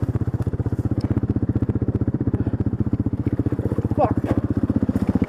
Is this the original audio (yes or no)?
no